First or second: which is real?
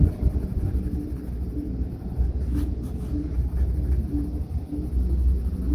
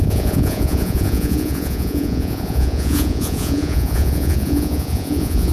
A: first